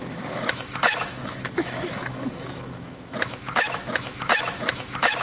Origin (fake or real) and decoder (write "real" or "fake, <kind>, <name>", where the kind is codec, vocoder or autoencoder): fake, autoencoder, DAC-VAE